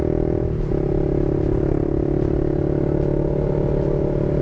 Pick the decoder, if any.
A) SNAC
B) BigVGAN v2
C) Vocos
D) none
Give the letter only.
D